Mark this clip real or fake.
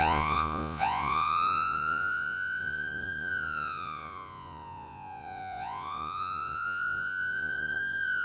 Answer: fake